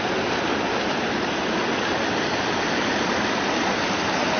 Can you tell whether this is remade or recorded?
recorded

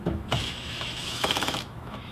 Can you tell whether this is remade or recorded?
remade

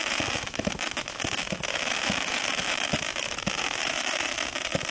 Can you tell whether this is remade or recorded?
remade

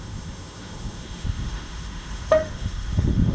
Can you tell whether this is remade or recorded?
remade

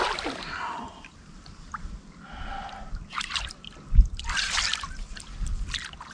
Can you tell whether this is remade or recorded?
recorded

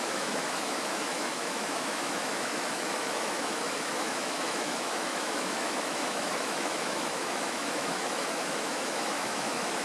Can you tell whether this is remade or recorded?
remade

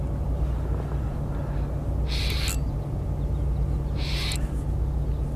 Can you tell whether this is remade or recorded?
recorded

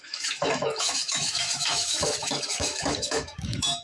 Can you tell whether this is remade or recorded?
remade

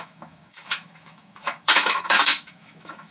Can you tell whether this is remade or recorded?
remade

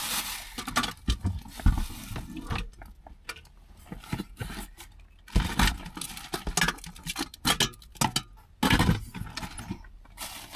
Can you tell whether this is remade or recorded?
recorded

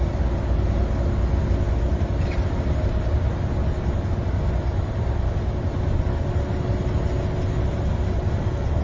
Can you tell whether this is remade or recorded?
recorded